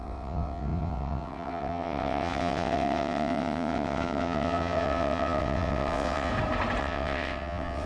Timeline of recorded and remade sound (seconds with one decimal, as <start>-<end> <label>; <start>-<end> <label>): 0.0-6.3 remade; 6.3-6.8 recorded; 6.8-7.9 remade